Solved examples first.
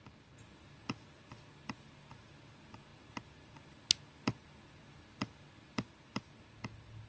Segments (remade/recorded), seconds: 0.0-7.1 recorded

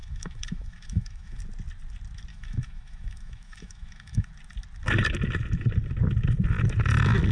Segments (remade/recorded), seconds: 0.0-1.4 remade; 1.4-2.3 recorded; 2.3-4.3 remade; 4.3-7.3 recorded